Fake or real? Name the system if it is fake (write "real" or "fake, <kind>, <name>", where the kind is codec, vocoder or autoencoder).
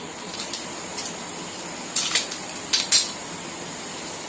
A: real